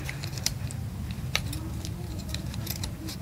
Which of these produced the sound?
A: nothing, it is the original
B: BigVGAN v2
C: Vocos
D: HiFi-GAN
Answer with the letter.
B